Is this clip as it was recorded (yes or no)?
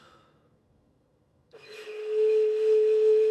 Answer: no